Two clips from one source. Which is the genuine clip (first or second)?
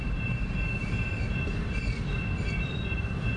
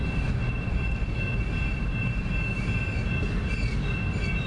second